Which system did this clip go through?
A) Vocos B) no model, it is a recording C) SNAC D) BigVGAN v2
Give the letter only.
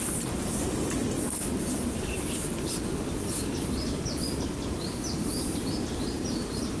B